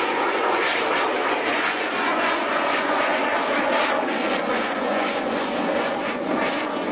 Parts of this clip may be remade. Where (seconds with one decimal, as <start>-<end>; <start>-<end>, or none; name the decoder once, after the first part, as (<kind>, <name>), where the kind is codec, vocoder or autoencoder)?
0.0-0.7 (vocoder, Vocos); 1.5-3.2; 4.5-6.9